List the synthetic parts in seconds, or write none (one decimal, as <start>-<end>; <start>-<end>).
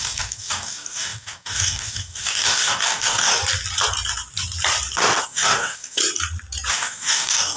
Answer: 0.0-3.3; 5.2-6.0; 6.7-7.6